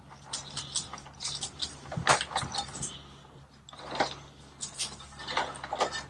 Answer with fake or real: real